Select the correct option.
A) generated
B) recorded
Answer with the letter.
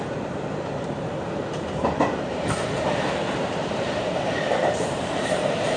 A